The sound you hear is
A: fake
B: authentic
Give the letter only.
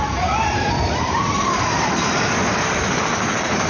A